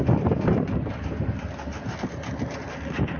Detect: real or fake real